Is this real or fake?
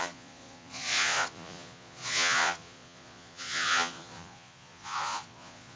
fake